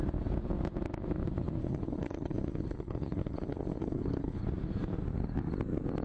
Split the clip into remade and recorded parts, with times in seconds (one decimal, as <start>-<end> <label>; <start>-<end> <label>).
0.0-1.6 recorded; 1.6-4.4 remade; 4.4-6.0 recorded